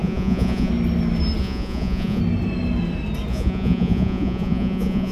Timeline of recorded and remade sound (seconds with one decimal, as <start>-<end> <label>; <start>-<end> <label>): 0.0-0.7 remade; 0.7-1.4 recorded; 1.4-2.2 remade; 2.2-3.3 recorded; 3.3-5.1 remade